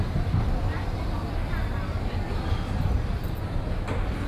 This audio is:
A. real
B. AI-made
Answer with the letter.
A